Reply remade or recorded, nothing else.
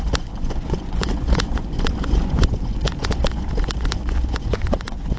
remade